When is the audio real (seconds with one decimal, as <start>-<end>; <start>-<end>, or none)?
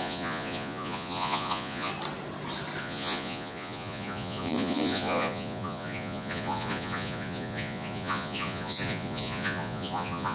1.9-2.8